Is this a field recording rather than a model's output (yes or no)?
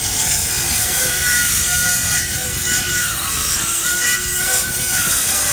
no